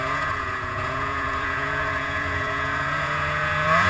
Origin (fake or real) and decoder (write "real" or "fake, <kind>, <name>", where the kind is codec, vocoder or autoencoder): fake, vocoder, Vocos